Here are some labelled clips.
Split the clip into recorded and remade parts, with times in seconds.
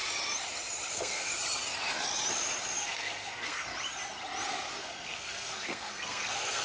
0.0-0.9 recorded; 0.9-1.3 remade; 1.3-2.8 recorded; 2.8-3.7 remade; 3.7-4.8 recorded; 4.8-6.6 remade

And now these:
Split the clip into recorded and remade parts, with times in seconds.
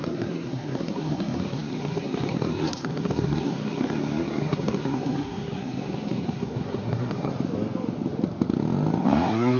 0.0-7.3 remade; 7.3-9.0 recorded; 9.0-9.6 remade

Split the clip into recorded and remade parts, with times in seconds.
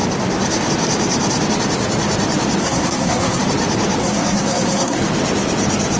0.0-2.6 recorded; 2.6-3.4 remade; 3.4-4.0 recorded; 4.0-5.0 remade; 5.0-6.0 recorded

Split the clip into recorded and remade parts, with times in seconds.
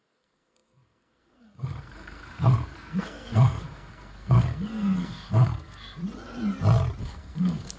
0.0-6.0 remade; 6.0-7.0 recorded; 7.0-7.8 remade